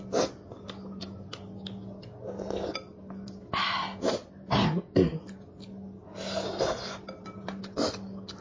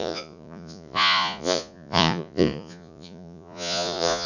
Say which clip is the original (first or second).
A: first